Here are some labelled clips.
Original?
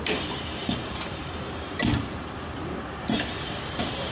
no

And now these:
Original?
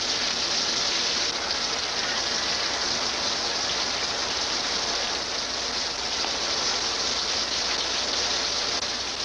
yes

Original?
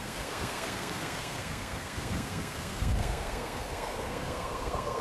no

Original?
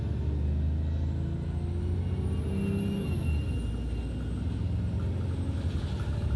yes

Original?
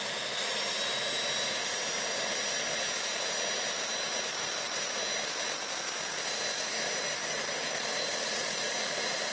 yes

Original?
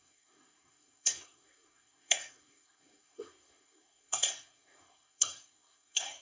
no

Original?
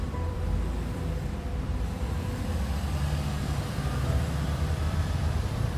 no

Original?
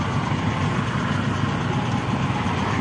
yes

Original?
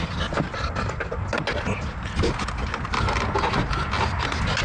yes